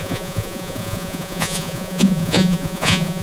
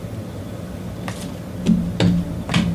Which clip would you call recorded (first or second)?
second